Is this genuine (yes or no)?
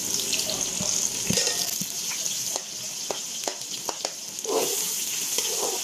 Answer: yes